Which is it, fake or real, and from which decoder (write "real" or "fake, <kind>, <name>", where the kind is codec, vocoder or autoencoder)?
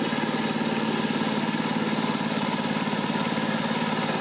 real